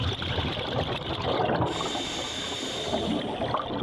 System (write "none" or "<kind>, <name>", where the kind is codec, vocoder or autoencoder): none